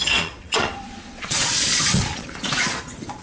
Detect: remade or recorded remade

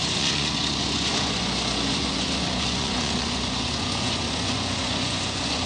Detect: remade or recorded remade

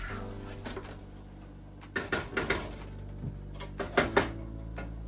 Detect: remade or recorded recorded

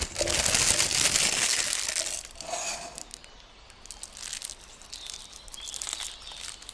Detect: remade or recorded recorded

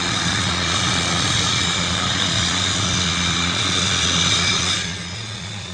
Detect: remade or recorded remade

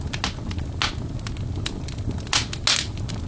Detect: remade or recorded recorded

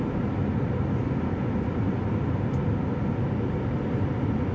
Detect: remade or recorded recorded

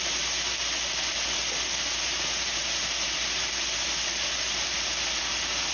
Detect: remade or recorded recorded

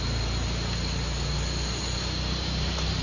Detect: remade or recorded recorded